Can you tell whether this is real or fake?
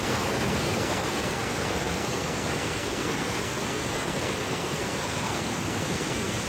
fake